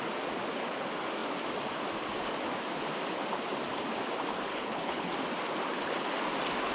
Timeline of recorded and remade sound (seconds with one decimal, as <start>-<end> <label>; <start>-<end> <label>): 0.0-4.5 recorded; 4.5-5.1 remade; 5.1-6.7 recorded